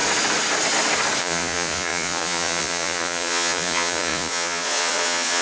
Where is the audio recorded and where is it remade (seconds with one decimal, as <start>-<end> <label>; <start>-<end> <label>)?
0.0-1.2 recorded; 1.2-5.4 remade